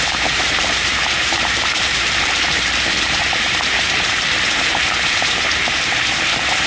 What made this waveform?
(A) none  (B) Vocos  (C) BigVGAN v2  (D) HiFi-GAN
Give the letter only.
C